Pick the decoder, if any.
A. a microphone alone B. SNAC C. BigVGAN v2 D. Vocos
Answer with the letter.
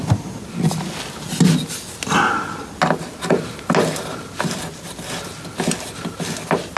A